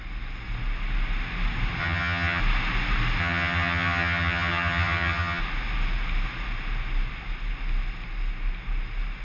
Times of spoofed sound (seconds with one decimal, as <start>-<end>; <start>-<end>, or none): 1.8-2.4; 3.2-5.4